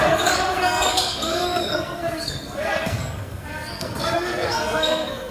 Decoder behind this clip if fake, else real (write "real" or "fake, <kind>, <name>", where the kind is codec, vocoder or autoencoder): fake, codec, SNAC